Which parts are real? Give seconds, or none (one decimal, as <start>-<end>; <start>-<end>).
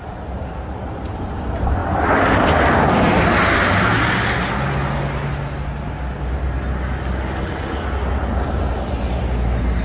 0.0-9.8